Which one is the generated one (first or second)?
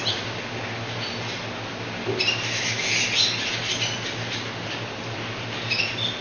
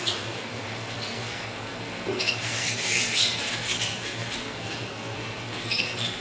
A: second